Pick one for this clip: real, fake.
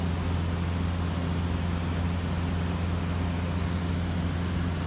real